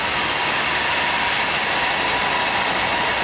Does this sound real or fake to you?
real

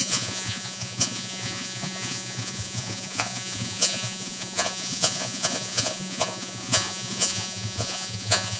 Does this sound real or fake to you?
fake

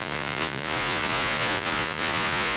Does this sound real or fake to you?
fake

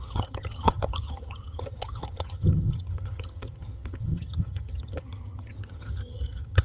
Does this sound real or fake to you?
fake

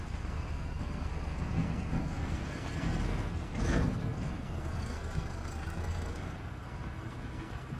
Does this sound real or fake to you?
fake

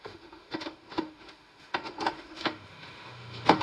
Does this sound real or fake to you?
fake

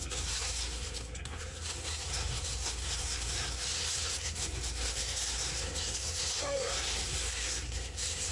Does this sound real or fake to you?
fake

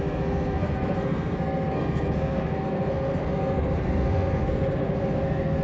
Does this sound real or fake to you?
fake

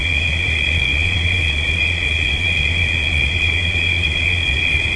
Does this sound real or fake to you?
fake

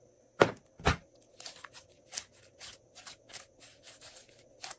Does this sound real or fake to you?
real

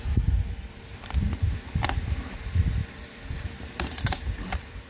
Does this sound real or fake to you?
fake